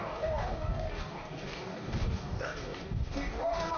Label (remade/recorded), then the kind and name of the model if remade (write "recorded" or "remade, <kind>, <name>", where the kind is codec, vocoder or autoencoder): remade, codec, DAC